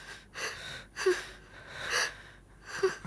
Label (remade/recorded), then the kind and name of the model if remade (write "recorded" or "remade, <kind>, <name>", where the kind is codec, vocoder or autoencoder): recorded